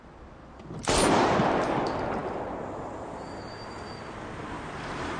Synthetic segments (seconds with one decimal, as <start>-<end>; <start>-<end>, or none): none